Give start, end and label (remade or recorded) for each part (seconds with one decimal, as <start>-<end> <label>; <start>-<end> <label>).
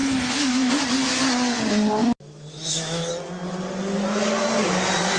0.0-0.7 remade; 0.7-2.0 recorded; 2.0-3.1 remade; 3.1-5.2 recorded